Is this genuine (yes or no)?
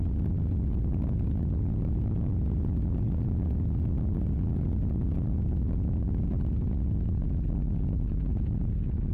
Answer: yes